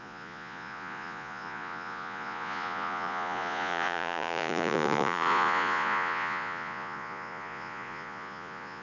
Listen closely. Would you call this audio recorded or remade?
remade